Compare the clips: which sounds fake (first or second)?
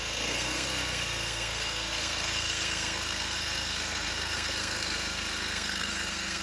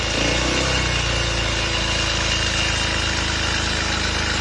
first